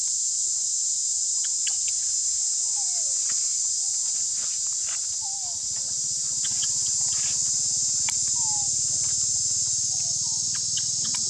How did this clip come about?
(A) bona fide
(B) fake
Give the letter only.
A